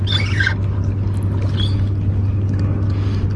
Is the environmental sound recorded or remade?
recorded